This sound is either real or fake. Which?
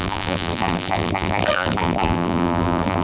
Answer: fake